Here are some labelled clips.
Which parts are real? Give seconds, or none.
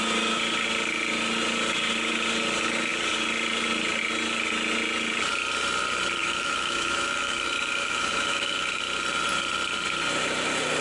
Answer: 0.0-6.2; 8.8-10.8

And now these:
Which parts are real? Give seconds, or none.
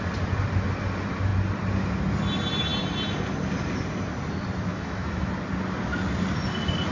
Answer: 0.0-4.7; 5.3-6.9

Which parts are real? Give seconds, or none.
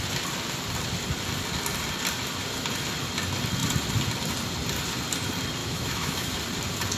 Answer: 0.0-5.6; 6.4-7.0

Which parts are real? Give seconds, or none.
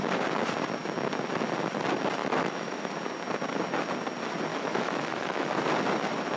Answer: 0.0-2.2; 2.9-4.5; 5.6-6.4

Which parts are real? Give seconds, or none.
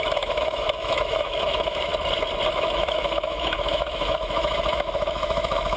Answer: 1.9-2.5